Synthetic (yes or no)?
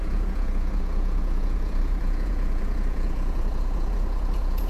yes